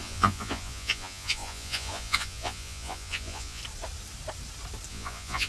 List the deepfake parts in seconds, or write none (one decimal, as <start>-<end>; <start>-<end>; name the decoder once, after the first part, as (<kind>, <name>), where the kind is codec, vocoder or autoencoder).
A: 0.0-3.6 (vocoder, Vocos); 4.9-5.5